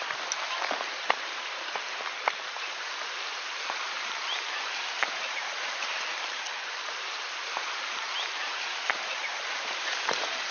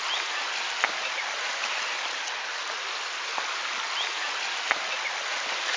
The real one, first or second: second